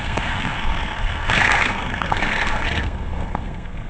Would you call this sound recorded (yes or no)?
no